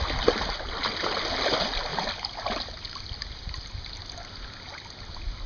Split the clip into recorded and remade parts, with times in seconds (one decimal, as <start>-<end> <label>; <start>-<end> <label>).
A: 0.0-5.5 recorded